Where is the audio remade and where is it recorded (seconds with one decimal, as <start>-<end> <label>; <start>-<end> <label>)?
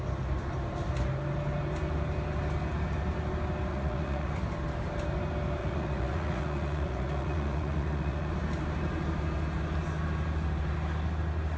0.0-3.7 recorded; 3.7-4.3 remade; 4.3-5.6 recorded; 5.6-8.3 remade; 8.3-11.6 recorded